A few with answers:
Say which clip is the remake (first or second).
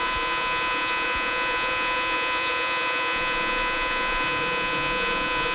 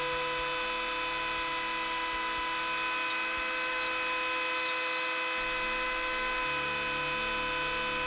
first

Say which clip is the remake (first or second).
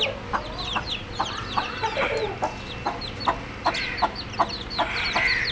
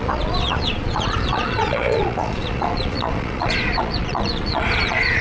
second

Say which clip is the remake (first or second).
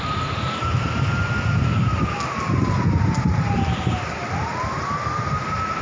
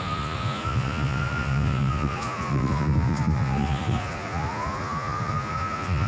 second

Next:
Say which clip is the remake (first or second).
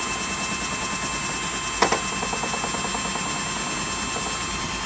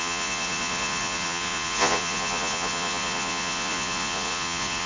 second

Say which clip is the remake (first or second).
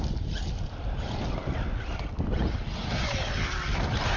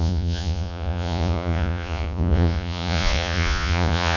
second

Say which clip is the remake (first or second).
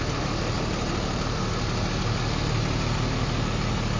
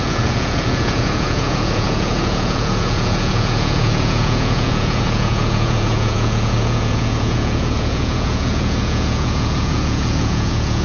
second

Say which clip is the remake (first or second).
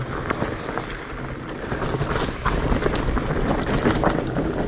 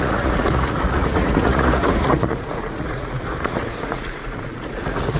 second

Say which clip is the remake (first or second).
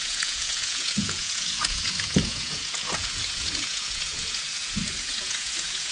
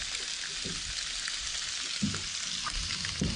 first